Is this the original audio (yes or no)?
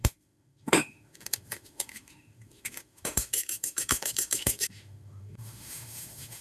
no